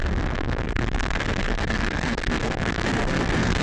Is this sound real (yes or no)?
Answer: no